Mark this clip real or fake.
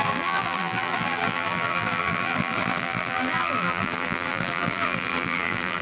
fake